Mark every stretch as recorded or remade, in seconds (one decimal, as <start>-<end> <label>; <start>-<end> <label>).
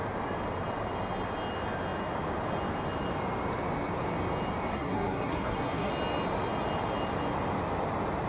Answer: 0.0-4.7 recorded; 4.7-5.9 remade; 5.9-8.3 recorded